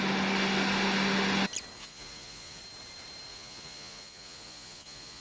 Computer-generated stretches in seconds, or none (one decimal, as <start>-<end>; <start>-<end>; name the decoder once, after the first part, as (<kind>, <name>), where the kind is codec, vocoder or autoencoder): 1.8-2.6 (vocoder, Vocos); 3.3-5.2

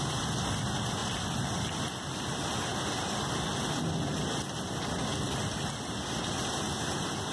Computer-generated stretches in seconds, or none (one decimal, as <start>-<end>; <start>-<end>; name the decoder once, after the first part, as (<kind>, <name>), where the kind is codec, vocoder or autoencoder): none

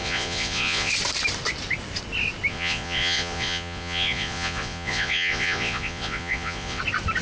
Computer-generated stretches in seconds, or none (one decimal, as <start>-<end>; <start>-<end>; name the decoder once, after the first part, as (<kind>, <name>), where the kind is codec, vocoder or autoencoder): 0.0-0.9 (vocoder, Vocos); 2.5-6.8

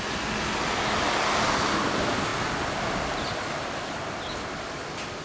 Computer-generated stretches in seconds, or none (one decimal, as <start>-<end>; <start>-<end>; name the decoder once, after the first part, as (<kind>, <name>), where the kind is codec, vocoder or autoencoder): none

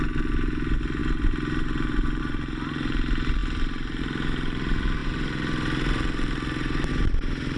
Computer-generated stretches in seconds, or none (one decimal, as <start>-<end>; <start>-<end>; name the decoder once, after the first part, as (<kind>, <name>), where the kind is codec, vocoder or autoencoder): 0.0-7.6 (vocoder, BigVGAN v2)

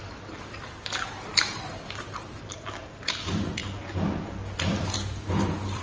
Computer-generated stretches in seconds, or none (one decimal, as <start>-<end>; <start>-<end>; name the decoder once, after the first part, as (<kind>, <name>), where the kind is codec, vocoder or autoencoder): 0.0-3.6 (vocoder, BigVGAN v2); 4.6-5.8

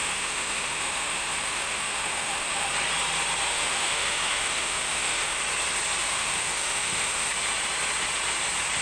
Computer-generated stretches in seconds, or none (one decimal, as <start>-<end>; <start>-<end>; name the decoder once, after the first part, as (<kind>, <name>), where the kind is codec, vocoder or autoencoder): 0.0-2.7 (autoencoder, DAC-VAE); 3.5-5.4; 6.1-7.3

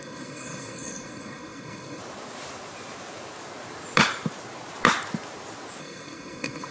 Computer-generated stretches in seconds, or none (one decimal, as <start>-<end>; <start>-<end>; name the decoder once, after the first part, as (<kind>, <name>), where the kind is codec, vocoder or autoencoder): 0.0-2.0 (codec, SNAC); 5.8-6.7